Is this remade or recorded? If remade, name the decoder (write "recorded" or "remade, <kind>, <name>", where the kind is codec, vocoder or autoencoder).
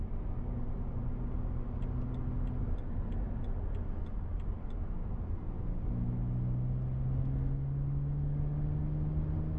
recorded